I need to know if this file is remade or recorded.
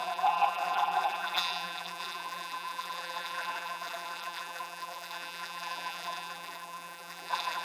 remade